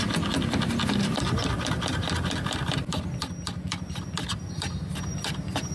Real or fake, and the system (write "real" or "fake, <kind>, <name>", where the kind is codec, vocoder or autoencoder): real